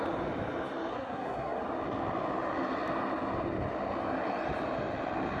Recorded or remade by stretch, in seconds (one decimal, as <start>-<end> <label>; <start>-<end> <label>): 0.0-0.9 recorded; 0.9-1.6 remade; 1.6-5.4 recorded